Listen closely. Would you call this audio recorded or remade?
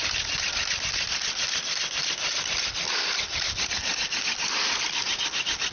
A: recorded